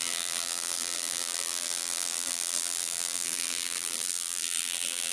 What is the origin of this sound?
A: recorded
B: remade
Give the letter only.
B